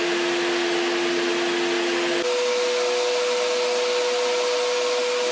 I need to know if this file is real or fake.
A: real